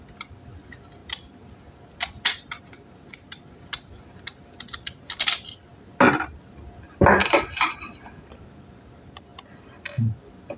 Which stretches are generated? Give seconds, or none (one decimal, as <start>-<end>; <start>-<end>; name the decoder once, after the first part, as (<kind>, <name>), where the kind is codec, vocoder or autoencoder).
7.2-7.8 (vocoder, BigVGAN v2)